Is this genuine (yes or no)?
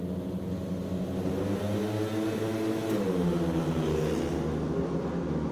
yes